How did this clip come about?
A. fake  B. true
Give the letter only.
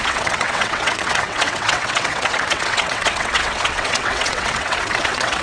A